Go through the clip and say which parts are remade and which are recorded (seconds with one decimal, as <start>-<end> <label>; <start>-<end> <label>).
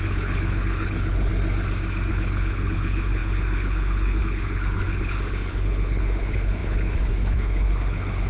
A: 0.0-1.3 remade; 1.3-2.1 recorded; 2.1-8.3 remade